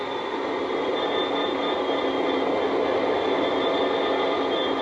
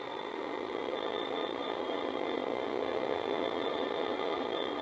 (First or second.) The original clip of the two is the first